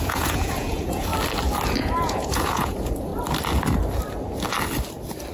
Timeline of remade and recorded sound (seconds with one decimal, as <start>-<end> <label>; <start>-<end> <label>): 0.0-1.1 remade; 1.1-1.8 recorded; 1.8-3.1 remade; 3.1-5.3 recorded